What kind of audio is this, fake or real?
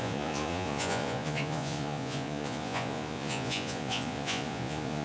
fake